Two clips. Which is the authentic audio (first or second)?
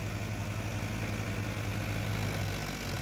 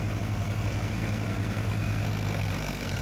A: first